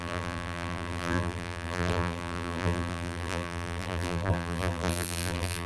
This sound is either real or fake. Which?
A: fake